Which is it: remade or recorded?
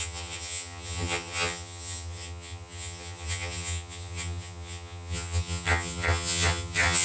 remade